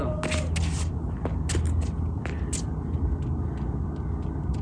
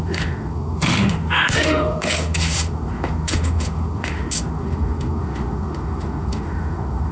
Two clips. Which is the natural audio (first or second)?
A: first